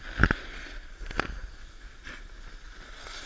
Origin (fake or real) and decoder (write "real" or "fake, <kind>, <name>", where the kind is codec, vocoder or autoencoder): real